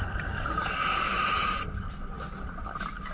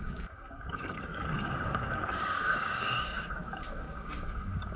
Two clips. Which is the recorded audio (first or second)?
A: first